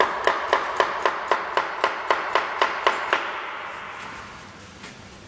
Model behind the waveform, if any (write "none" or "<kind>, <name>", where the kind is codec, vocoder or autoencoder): none